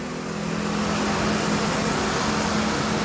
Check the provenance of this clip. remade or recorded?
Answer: recorded